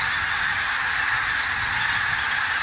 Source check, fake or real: real